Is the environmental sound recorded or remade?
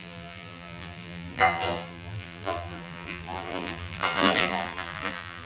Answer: remade